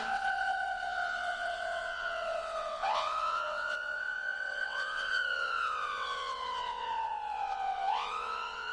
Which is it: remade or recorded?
remade